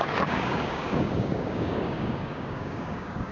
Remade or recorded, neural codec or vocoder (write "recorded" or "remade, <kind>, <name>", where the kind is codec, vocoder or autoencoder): remade, codec, DAC